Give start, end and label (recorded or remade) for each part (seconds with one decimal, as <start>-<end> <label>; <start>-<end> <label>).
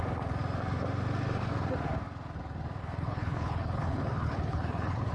0.0-2.8 recorded; 2.8-5.1 remade